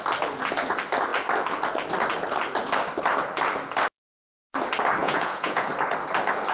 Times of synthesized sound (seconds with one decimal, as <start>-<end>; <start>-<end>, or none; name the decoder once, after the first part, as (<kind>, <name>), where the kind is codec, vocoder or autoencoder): 5.0-5.7 (vocoder, Vocos)